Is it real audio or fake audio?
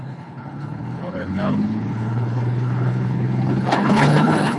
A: fake